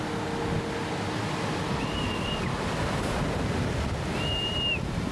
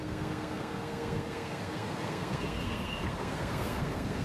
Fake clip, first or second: second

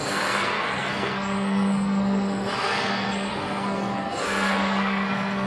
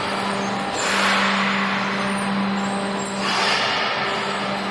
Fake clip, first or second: first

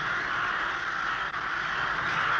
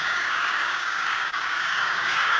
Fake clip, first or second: second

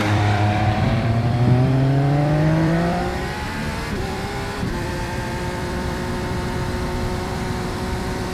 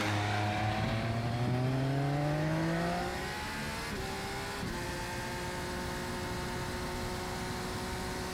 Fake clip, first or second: first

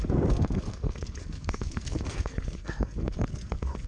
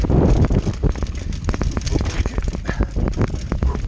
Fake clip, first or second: first